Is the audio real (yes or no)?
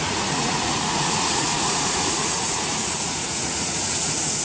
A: no